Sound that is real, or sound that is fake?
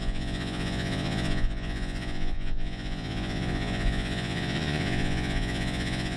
fake